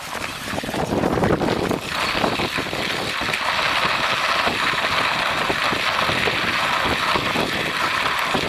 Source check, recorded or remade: recorded